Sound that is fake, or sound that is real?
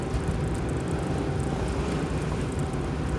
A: real